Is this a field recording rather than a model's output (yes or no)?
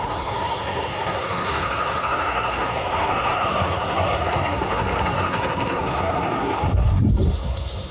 no